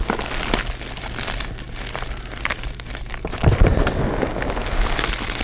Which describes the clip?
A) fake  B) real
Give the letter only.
B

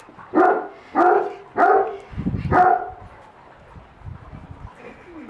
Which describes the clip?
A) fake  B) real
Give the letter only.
B